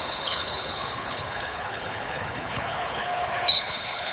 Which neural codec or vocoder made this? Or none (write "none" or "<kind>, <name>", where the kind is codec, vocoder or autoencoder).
codec, HILCodec